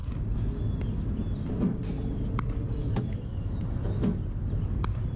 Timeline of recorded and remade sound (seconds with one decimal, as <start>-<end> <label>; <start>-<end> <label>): 0.0-2.8 recorded; 2.8-4.1 remade; 4.1-5.2 recorded